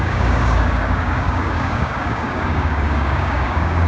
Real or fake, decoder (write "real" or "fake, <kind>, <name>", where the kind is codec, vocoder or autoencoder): fake, codec, DAC